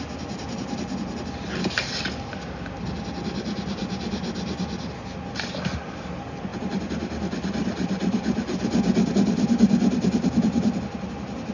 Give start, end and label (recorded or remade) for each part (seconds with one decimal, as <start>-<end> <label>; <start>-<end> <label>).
0.0-11.5 recorded